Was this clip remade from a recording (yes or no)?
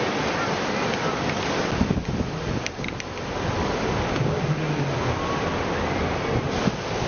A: no